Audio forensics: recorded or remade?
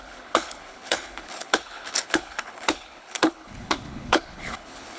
remade